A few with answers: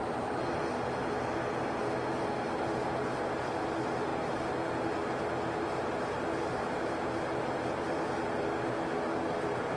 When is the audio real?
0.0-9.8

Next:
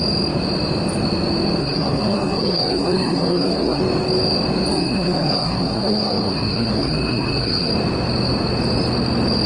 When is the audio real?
0.0-1.6; 3.8-4.7; 7.7-9.5